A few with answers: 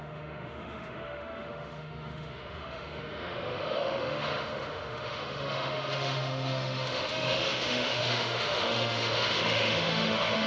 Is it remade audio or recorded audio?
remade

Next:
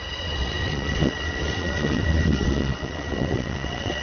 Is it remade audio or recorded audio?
remade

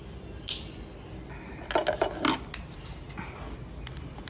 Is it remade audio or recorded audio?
recorded